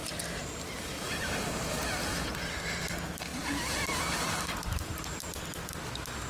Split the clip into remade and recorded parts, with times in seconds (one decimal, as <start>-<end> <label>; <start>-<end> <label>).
0.0-6.3 recorded

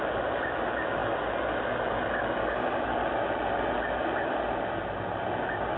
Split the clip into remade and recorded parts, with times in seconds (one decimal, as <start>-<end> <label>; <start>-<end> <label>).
0.0-5.8 recorded

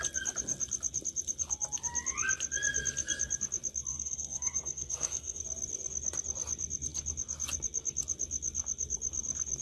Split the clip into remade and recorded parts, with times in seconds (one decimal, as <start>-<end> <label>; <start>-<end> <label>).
0.0-3.9 recorded; 3.9-5.4 remade; 5.4-9.6 recorded

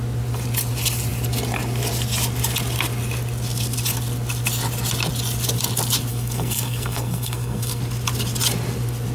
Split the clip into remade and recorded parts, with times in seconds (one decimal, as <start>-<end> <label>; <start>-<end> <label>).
0.0-6.1 recorded; 6.1-7.8 remade; 7.8-9.1 recorded

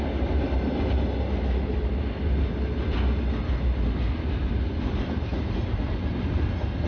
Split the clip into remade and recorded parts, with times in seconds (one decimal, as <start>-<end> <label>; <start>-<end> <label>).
0.0-6.9 recorded

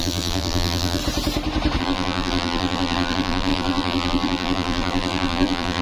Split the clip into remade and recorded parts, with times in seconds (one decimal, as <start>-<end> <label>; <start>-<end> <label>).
0.0-1.0 remade; 1.0-1.8 recorded; 1.8-5.8 remade

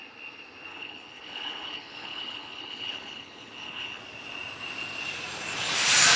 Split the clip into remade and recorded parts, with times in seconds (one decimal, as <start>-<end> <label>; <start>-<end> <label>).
0.0-0.7 recorded; 0.7-4.0 remade; 4.0-6.2 recorded

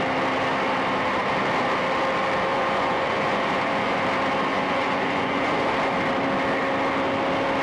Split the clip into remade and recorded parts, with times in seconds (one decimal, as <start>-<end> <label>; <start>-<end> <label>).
0.0-2.5 recorded; 2.5-4.0 remade; 4.0-4.5 recorded; 4.5-5.7 remade; 5.7-7.6 recorded